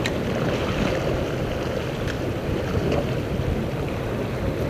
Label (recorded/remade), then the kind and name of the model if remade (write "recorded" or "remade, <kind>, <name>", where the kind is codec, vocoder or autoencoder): recorded